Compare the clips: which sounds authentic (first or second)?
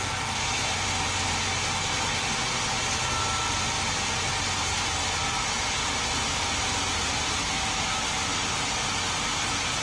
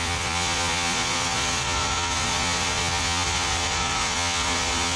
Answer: first